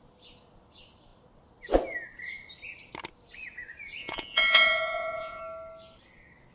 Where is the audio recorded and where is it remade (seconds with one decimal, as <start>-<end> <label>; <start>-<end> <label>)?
0.0-4.0 recorded; 4.0-5.4 remade; 5.4-6.5 recorded